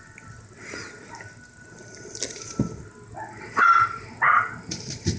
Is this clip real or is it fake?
real